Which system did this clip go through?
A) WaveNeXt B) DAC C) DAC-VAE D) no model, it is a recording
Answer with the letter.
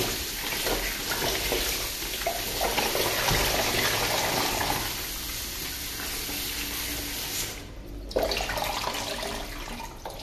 D